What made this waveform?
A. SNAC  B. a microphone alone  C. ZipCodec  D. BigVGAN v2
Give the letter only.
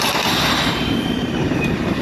D